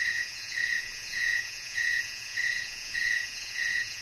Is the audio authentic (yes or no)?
no